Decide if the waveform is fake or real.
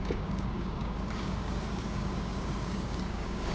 fake